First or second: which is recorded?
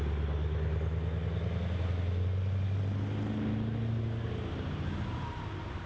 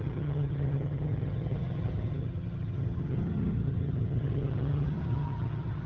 first